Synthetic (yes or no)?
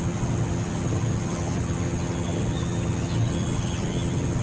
yes